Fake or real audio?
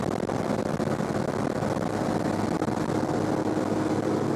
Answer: real